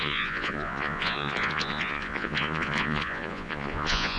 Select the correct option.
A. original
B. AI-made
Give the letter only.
B